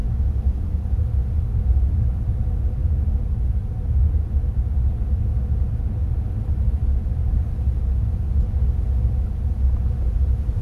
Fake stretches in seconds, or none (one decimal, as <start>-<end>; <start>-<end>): none